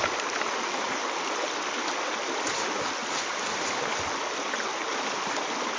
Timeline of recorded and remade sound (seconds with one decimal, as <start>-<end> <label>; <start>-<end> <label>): 0.0-3.0 recorded; 3.0-3.6 remade; 3.6-5.8 recorded